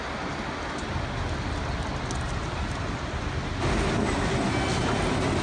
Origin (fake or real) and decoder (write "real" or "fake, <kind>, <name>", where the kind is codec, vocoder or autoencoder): real